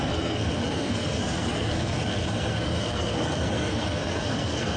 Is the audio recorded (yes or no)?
no